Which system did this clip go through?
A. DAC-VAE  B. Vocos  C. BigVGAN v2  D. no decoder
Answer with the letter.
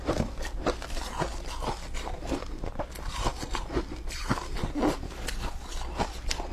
C